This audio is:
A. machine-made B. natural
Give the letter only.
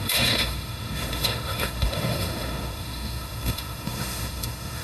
A